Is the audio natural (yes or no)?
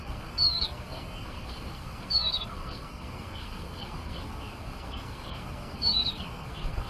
no